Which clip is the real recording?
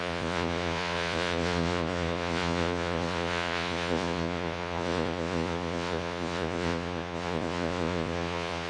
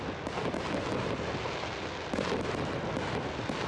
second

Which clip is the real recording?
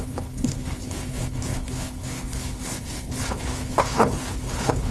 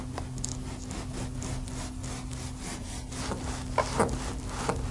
second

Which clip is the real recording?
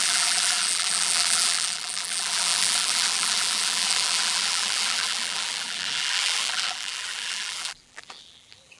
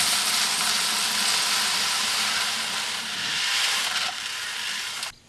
second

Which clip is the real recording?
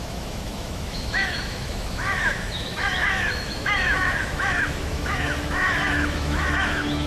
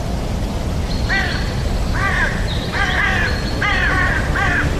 second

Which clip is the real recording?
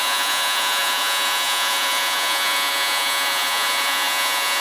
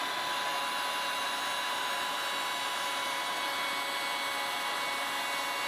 second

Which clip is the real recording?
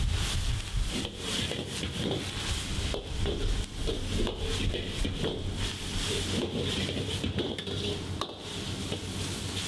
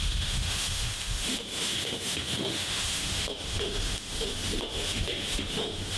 first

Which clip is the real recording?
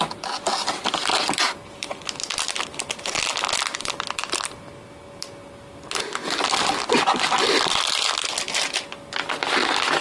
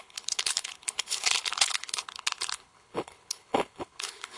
first